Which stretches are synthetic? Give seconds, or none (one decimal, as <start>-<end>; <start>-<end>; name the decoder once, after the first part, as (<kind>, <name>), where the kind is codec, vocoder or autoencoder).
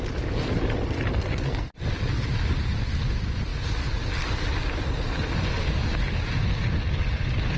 1.2-1.8 (codec, SNAC)